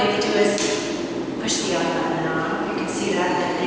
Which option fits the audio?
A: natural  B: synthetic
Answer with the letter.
A